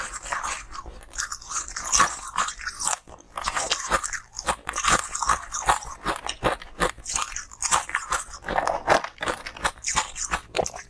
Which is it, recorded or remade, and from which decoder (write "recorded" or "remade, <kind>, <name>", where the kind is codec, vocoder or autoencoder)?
recorded